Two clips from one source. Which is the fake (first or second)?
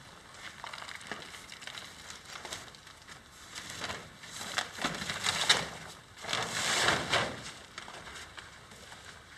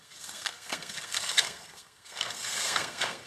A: second